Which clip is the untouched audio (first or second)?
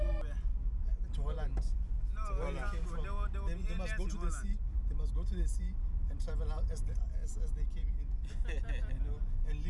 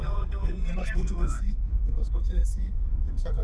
first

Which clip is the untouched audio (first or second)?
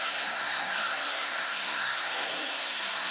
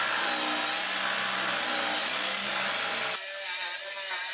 second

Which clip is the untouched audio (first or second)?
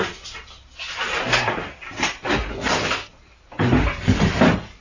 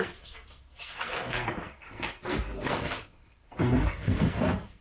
first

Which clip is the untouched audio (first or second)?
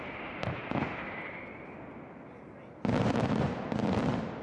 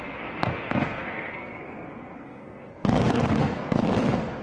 first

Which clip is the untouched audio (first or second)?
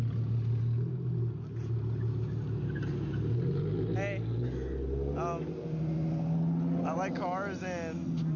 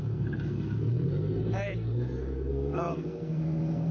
first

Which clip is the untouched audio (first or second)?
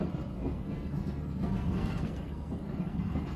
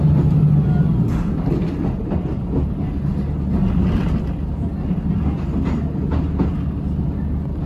second